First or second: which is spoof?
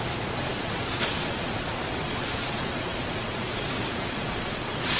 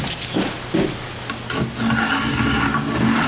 first